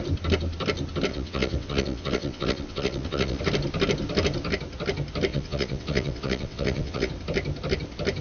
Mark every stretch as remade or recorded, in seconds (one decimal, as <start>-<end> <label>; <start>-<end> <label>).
0.0-1.1 recorded; 1.1-3.4 remade; 3.4-5.3 recorded; 5.3-7.1 remade; 7.1-8.2 recorded